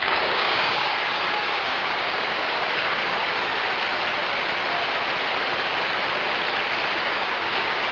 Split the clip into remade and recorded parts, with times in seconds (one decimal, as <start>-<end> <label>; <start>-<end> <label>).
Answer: 0.0-3.5 remade; 3.5-7.0 recorded; 7.0-7.9 remade